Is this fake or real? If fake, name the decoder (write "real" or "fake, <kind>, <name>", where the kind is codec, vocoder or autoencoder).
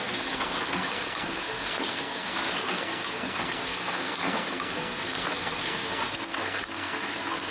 fake, codec, SNAC